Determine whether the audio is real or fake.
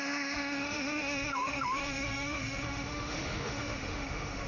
fake